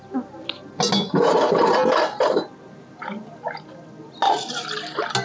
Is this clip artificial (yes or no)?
no